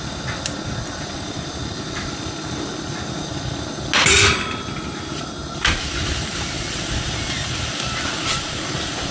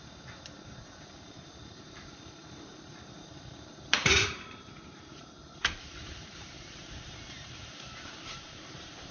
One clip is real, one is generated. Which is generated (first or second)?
second